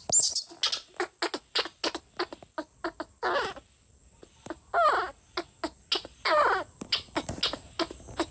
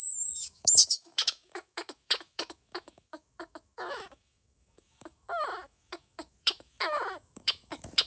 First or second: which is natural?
first